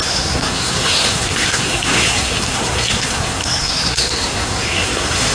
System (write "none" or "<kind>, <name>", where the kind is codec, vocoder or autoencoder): codec, SNAC